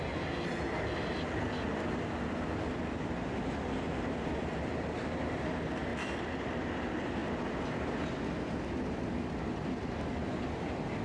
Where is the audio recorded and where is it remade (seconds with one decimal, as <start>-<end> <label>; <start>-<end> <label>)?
0.0-5.9 recorded; 5.9-6.5 remade; 6.5-11.0 recorded